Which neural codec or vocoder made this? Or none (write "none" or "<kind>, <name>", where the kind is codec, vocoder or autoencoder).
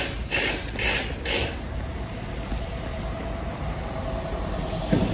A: none